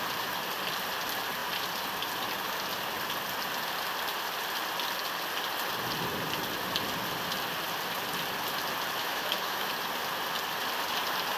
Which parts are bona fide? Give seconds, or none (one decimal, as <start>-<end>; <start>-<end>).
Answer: 0.0-9.0; 9.7-11.4